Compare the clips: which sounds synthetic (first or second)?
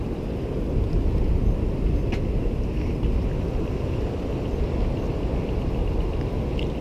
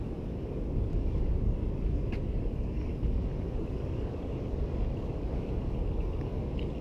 second